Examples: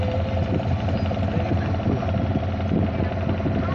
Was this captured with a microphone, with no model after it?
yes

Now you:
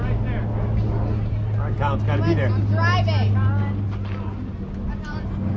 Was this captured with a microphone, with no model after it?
yes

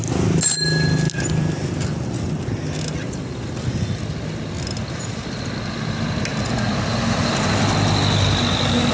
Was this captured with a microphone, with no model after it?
yes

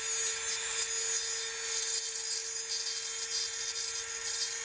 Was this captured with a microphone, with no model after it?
yes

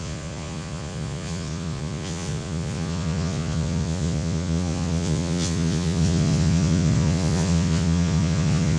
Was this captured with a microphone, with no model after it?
no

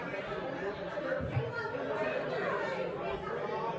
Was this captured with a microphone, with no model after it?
yes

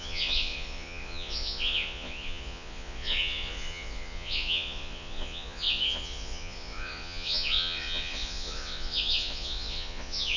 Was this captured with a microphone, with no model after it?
no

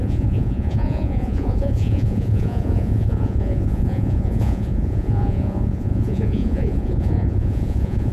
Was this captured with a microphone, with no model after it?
no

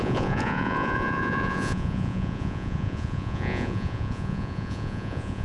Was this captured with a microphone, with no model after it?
no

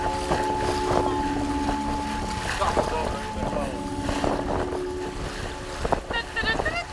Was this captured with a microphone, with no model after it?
yes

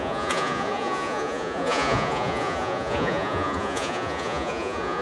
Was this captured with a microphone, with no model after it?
no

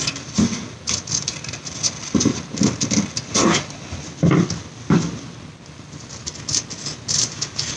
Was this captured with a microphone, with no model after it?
yes